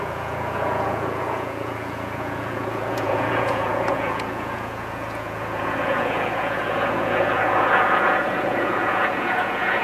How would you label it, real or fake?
fake